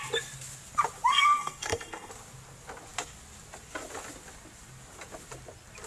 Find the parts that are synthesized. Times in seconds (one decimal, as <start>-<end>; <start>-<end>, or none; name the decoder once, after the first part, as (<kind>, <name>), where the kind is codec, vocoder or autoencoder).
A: 1.1-2.1 (codec, SNAC)